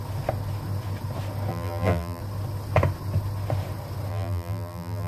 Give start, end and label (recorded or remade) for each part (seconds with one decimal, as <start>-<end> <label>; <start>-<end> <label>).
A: 0.0-1.5 recorded; 1.5-2.2 remade; 2.2-4.1 recorded; 4.1-5.1 remade